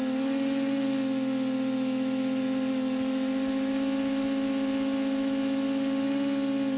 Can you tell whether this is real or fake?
real